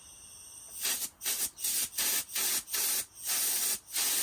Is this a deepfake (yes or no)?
no